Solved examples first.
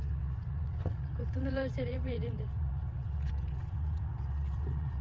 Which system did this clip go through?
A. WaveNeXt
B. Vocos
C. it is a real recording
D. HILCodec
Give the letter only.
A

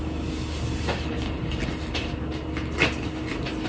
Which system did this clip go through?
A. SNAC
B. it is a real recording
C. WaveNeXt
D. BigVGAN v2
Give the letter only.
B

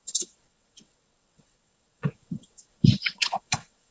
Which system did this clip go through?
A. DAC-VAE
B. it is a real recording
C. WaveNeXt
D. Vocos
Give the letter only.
C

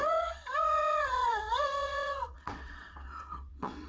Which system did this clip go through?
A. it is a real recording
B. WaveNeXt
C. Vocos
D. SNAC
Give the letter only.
B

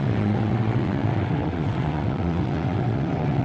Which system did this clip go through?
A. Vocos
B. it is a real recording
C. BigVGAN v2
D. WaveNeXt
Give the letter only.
D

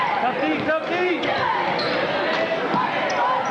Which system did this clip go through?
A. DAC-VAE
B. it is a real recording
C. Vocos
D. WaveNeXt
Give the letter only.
B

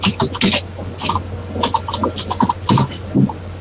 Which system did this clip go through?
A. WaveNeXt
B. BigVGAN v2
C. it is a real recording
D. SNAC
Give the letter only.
C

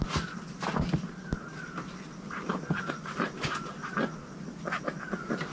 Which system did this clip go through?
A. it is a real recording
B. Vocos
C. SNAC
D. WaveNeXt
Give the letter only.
A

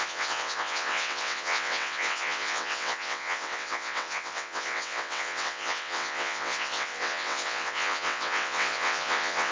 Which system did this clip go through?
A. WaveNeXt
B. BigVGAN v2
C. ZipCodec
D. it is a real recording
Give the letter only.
A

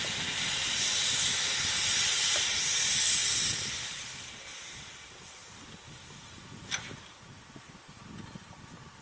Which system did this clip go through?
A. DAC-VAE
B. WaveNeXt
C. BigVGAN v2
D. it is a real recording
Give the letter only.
D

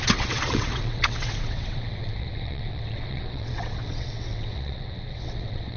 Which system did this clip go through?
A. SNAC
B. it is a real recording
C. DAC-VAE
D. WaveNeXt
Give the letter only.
D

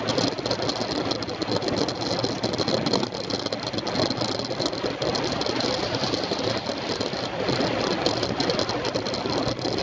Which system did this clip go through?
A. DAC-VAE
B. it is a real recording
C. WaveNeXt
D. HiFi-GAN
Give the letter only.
B